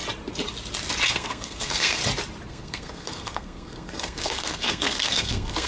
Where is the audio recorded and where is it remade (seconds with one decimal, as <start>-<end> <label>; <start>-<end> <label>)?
0.0-1.1 recorded; 1.1-2.0 remade; 2.0-2.5 recorded; 2.5-5.7 remade